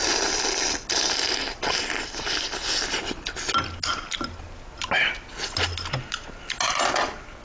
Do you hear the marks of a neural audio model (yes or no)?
no